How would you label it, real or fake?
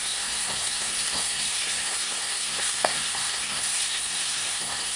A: fake